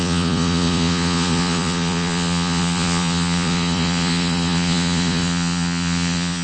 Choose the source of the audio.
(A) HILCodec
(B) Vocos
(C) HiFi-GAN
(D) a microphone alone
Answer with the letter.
B